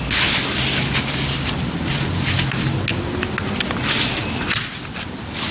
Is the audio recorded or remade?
recorded